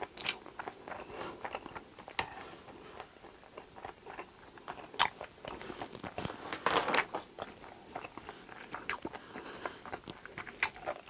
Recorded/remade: recorded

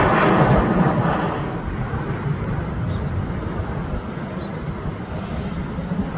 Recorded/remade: recorded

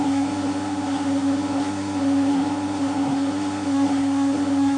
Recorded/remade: remade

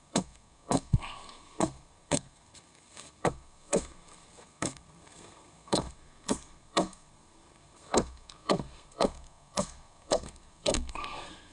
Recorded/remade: remade